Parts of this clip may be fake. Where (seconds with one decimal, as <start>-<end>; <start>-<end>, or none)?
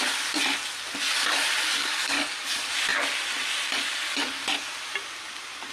1.8-2.5